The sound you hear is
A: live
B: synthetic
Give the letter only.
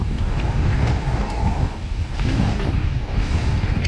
B